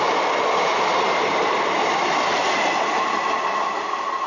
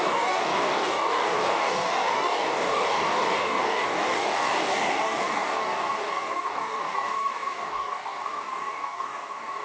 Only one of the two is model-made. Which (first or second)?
second